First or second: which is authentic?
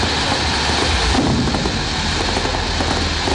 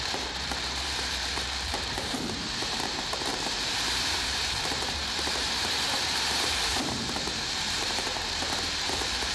first